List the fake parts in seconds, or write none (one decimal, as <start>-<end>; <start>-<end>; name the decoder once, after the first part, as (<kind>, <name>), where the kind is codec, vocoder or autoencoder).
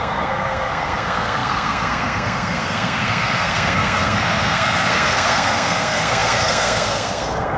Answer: 0.0-7.6 (codec, SNAC)